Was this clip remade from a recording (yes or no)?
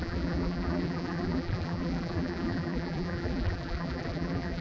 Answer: yes